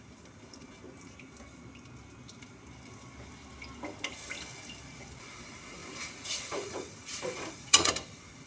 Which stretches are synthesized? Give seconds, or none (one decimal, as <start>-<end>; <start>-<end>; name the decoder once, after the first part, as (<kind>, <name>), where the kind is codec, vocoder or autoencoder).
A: 5.8-7.9 (vocoder, Vocos)